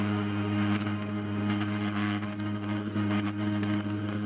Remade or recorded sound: remade